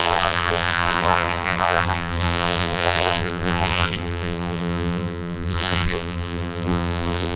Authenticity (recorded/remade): remade